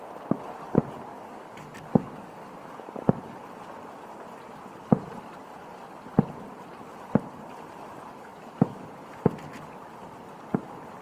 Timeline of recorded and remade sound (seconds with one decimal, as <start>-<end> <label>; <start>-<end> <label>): 0.0-1.1 recorded; 1.1-3.1 remade; 3.1-8.3 recorded; 8.3-9.1 remade; 9.1-11.0 recorded